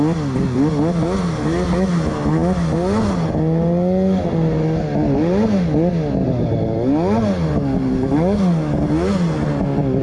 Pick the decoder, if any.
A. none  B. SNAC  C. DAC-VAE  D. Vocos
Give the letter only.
A